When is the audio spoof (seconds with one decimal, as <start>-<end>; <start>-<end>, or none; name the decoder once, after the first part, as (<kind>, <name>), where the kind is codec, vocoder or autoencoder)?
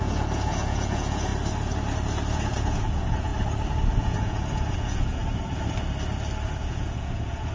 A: 0.0-1.3 (vocoder, Vocos); 2.3-3.3; 4.0-5.2; 6.6-7.5